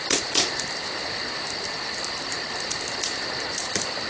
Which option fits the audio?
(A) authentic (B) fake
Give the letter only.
A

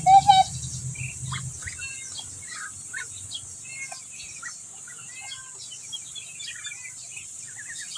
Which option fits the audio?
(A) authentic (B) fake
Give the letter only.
A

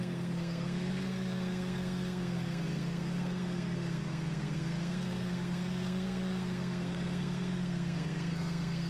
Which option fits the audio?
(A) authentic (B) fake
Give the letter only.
B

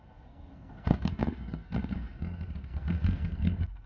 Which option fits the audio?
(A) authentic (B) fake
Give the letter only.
B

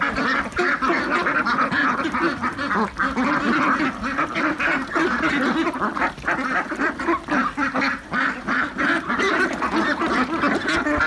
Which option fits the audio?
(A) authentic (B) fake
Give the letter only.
A